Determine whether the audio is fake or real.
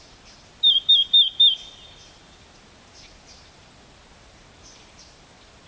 real